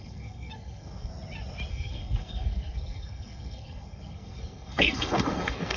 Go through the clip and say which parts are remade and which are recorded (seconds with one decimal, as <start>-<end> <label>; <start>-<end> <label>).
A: 0.0-1.1 remade; 1.1-1.7 recorded; 1.7-5.8 remade